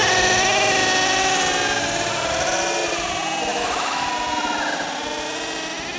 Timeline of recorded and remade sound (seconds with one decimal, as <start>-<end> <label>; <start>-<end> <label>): 0.0-3.5 recorded; 3.5-4.1 remade; 4.1-6.0 recorded